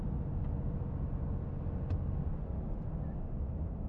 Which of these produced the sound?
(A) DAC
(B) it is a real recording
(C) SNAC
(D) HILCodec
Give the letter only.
B